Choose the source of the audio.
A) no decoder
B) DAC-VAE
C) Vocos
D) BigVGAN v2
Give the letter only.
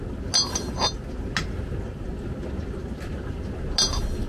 A